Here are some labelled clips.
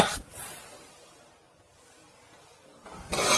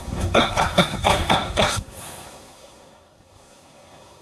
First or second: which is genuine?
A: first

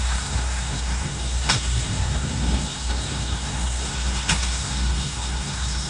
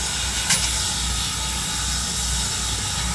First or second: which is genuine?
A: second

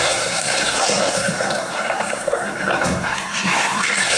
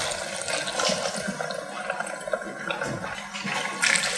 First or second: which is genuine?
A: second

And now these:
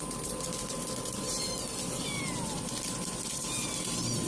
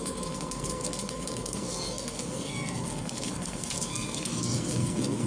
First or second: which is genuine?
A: first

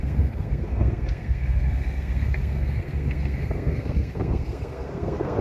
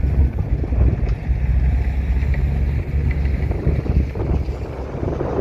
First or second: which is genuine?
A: second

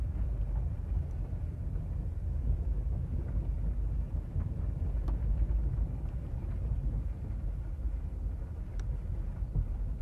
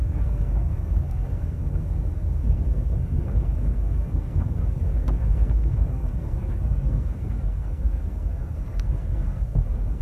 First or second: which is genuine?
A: first